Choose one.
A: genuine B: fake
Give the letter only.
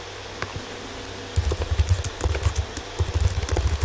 A